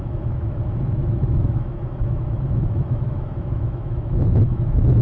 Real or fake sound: fake